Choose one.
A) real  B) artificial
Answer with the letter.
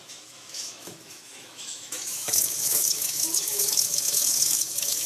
B